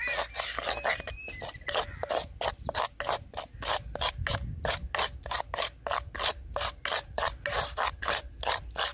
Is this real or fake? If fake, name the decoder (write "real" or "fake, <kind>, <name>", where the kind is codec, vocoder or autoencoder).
real